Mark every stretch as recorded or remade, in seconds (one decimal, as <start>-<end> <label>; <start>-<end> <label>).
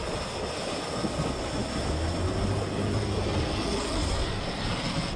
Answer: 0.0-3.7 recorded; 3.7-4.7 remade; 4.7-5.2 recorded